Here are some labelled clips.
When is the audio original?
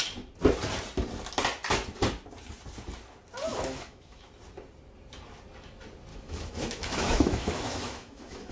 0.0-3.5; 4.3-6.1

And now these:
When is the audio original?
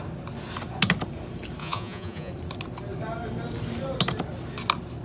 0.0-1.6; 2.3-5.0